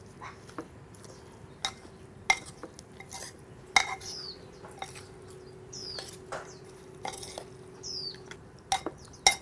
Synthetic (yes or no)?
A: no